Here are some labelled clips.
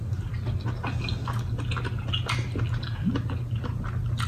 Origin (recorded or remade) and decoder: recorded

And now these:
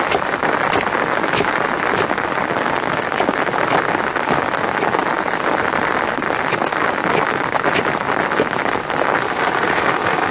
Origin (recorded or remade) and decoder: recorded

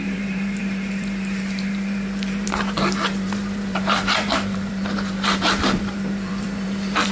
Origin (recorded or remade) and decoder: remade, vocoder, BigVGAN v2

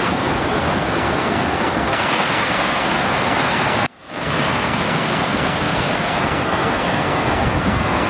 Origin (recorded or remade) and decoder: remade, codec, SNAC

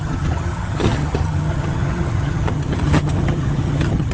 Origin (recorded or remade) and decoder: remade, vocoder, HiFi-GAN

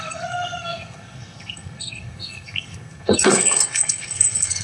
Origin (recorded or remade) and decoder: remade, codec, SNAC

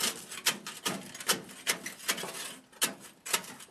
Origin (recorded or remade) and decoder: recorded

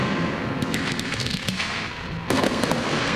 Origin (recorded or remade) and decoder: remade, codec, SNAC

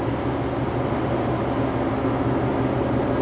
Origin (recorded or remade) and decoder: recorded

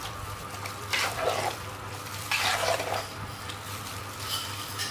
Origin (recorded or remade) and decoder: remade, vocoder, BigVGAN v2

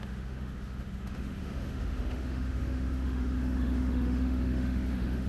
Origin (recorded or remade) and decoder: remade, autoencoder, DAC-VAE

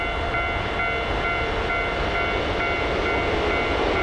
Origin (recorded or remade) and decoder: recorded